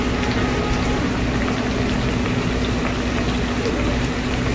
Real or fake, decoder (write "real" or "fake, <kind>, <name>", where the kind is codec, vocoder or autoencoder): real